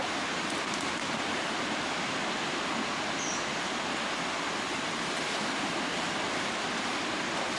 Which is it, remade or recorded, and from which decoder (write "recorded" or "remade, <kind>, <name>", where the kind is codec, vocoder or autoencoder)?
recorded